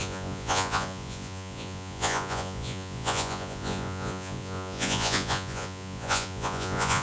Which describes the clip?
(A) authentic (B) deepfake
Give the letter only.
B